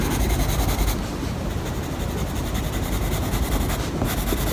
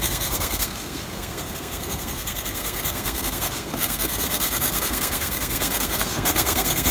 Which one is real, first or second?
first